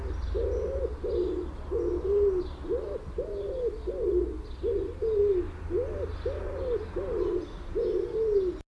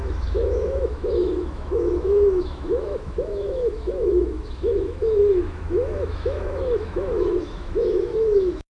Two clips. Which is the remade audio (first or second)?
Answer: second